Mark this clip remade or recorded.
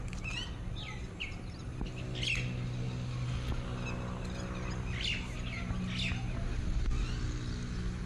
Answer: recorded